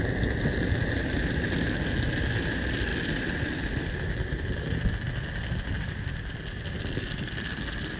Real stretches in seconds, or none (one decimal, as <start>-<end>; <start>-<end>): 0.0-8.0